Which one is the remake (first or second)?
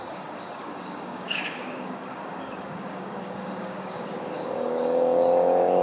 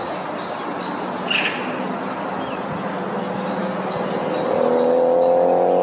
first